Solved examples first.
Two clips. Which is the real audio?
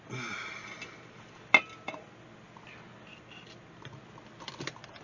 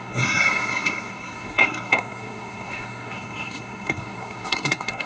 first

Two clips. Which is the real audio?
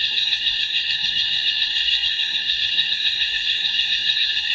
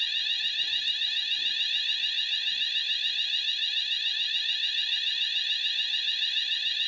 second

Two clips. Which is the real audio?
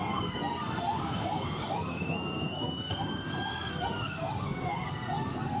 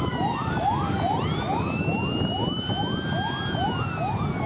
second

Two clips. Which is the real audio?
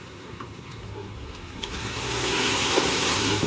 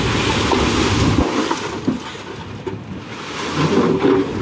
second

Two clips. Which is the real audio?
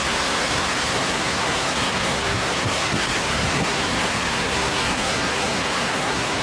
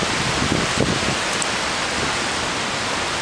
second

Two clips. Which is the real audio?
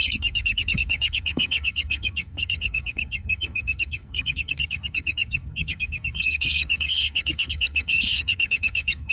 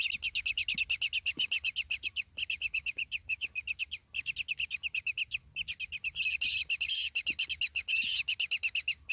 second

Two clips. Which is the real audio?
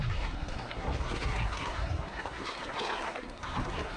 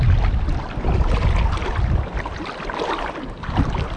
second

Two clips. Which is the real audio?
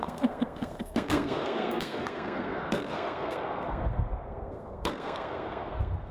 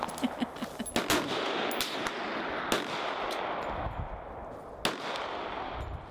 second